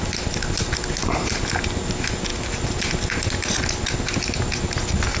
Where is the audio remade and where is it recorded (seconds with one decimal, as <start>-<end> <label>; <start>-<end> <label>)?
0.0-5.2 recorded